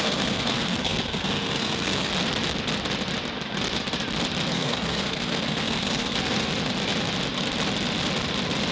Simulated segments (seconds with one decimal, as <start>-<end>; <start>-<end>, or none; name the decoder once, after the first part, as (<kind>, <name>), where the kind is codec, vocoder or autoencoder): 0.0-2.1 (codec, SNAC); 4.5-6.5